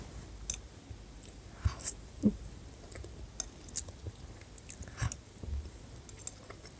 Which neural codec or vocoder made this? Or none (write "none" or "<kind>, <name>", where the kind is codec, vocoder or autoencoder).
none